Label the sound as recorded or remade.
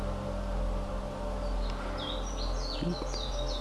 recorded